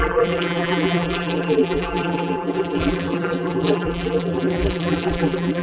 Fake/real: fake